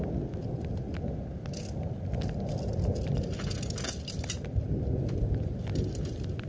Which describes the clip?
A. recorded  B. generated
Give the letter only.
A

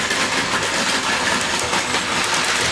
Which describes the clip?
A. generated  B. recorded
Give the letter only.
B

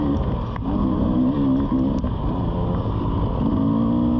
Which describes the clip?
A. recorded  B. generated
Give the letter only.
A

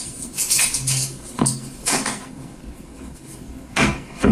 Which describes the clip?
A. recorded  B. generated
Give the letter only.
B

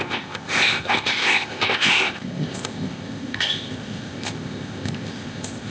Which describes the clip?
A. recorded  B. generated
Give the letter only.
B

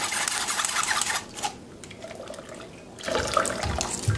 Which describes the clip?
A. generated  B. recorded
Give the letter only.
B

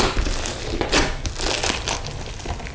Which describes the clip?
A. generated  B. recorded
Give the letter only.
B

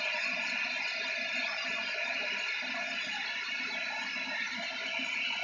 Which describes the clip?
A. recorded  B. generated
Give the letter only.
A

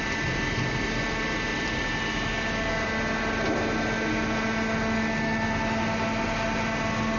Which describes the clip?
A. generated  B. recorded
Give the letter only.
B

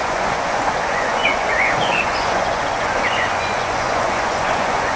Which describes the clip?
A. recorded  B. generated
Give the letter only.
B